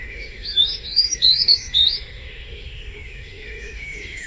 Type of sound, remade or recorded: remade